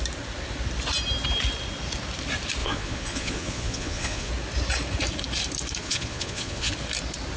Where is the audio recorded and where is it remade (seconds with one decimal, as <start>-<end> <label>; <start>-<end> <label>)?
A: 0.0-2.6 recorded; 2.6-4.3 remade; 4.3-5.8 recorded; 5.8-6.7 remade; 6.7-7.4 recorded